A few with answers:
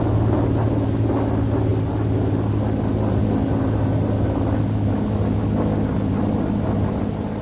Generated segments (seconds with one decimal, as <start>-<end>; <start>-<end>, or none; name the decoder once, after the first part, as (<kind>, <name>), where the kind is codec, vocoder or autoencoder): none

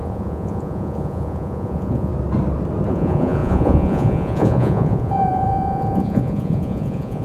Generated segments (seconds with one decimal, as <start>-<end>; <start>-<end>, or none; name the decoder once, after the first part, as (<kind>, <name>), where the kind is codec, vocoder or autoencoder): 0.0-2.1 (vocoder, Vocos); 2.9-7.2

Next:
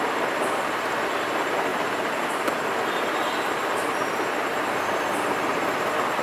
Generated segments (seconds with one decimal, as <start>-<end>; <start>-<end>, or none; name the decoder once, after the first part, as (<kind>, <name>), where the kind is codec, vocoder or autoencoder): none

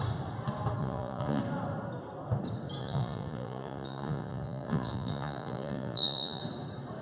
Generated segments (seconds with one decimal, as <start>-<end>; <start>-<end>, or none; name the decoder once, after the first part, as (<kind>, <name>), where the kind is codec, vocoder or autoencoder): 0.8-1.4 (vocoder, Vocos); 2.8-6.4

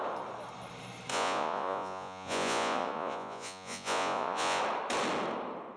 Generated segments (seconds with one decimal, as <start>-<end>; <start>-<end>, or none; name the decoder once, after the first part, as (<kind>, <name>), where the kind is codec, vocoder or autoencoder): 1.1-4.6 (vocoder, Vocos)

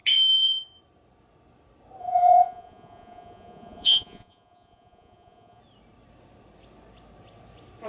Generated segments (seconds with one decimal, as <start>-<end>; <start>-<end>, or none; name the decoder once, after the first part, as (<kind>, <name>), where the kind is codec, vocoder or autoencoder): 2.0-5.6 (vocoder, Vocos)

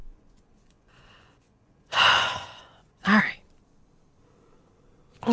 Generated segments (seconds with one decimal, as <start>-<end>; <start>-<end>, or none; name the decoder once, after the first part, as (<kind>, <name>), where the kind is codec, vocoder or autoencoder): 0.0-3.2 (vocoder, Vocos)